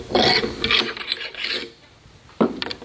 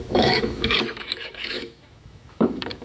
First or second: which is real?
first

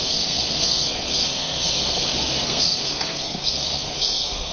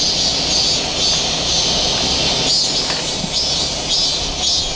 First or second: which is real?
second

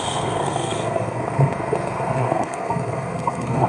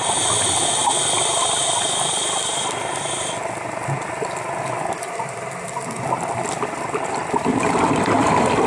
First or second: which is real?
second